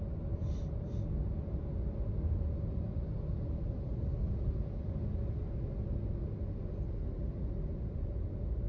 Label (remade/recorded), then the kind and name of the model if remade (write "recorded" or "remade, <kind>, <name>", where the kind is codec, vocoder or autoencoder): recorded